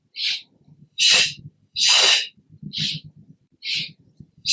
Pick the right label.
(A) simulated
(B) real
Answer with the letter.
A